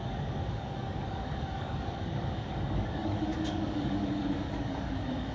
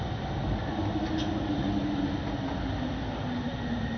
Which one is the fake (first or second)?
first